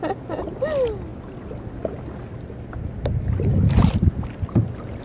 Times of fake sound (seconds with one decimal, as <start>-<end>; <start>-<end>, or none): none

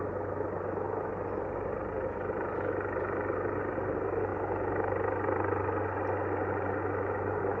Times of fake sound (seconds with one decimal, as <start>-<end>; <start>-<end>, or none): none

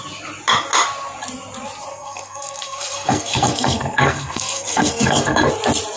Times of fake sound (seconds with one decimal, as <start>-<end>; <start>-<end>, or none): 1.9-5.5

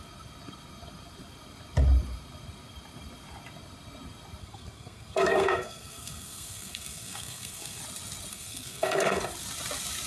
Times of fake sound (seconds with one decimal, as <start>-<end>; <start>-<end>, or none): 4.4-7.8; 8.3-9.2

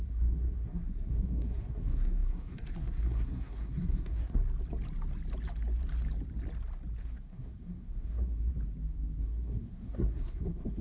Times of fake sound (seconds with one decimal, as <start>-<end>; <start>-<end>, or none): 0.0-4.4; 7.0-8.5; 9.2-10.8